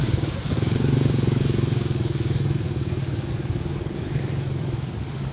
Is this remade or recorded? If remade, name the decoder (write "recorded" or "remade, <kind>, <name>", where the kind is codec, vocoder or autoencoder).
remade, codec, DAC